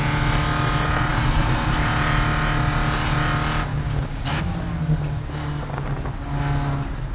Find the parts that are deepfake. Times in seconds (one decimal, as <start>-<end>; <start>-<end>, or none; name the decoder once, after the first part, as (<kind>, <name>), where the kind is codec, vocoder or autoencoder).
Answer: 3.7-4.4 (codec, DAC)